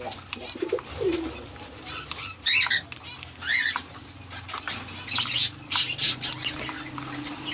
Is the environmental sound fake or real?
fake